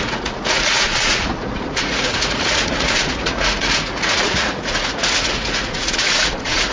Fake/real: fake